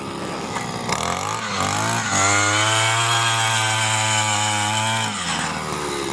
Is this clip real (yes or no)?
yes